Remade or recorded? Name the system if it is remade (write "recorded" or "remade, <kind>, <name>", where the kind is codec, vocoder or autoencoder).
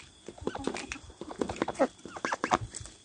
recorded